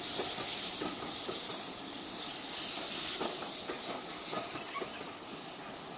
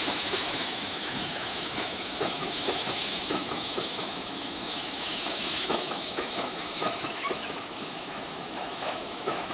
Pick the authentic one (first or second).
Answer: first